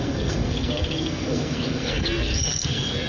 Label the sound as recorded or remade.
remade